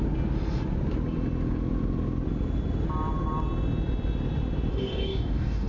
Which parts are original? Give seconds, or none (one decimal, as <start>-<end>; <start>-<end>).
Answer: 0.0-4.7